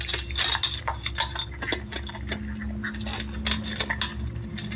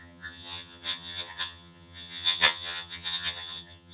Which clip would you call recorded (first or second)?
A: first